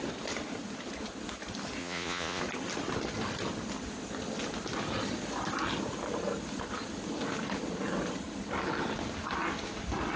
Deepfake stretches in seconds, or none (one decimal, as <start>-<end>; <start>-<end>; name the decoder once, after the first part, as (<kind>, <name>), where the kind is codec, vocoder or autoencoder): 1.8-2.4 (vocoder, Vocos)